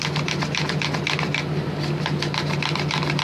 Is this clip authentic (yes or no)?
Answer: yes